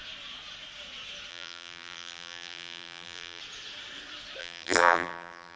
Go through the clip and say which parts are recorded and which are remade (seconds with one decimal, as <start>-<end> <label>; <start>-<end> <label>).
0.0-1.3 recorded; 1.3-3.4 remade; 3.4-4.4 recorded; 4.4-5.6 remade